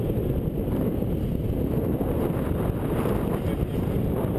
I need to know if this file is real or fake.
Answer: real